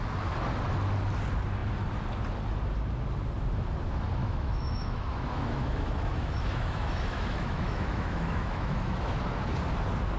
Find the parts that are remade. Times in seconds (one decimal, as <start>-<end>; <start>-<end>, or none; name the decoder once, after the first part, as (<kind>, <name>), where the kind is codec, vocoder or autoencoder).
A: 4.2-9.2 (autoencoder, DAC-VAE)